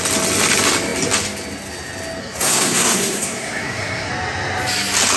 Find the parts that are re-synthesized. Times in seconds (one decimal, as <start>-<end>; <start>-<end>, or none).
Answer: 2.2-4.1